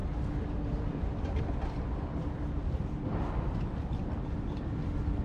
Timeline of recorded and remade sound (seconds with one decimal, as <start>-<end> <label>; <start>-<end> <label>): 0.0-5.2 recorded